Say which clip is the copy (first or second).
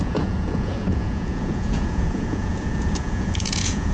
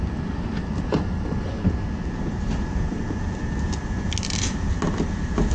first